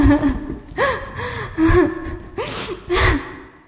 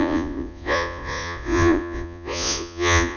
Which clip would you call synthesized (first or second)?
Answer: second